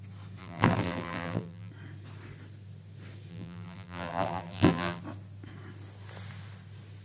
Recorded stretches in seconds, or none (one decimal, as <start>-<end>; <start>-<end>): 0.0-0.4; 1.7-3.3; 5.0-7.0